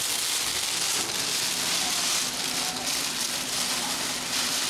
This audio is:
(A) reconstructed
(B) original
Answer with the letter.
B